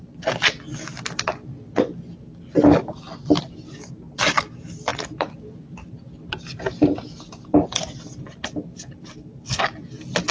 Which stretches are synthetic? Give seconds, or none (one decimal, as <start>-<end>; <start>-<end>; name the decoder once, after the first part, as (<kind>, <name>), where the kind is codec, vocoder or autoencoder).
4.9-9.6 (vocoder, BigVGAN v2)